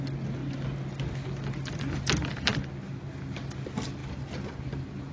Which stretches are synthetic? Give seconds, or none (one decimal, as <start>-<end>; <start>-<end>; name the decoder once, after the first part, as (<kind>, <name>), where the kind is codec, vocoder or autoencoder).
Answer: none